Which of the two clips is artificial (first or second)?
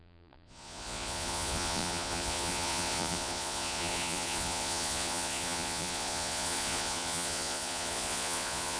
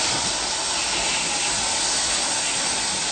first